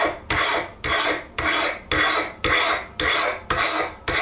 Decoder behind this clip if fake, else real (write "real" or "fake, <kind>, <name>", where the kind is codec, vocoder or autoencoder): real